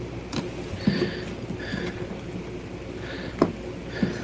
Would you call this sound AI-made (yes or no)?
no